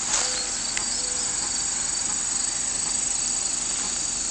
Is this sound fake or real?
real